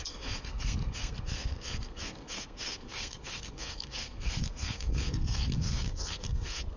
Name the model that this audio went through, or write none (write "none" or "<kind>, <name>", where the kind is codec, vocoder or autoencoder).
codec, SNAC